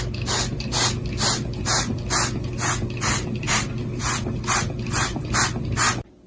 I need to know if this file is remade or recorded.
recorded